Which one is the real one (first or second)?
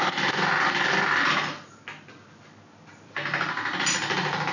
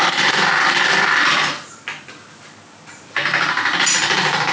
first